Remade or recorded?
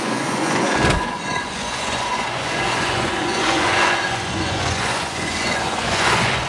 remade